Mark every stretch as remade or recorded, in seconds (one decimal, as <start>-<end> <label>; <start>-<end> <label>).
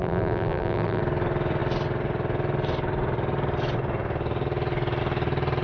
0.0-1.0 remade; 1.0-5.6 recorded